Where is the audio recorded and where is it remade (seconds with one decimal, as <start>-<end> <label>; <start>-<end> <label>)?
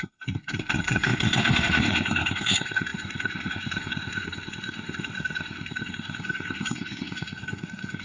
0.0-8.0 remade